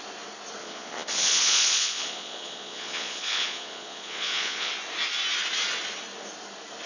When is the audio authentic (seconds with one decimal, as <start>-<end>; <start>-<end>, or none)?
0.0-0.6; 4.7-6.9